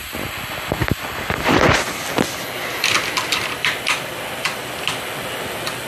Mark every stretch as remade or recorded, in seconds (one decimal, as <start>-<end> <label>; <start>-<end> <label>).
0.0-5.9 recorded